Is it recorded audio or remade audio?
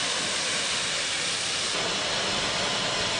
recorded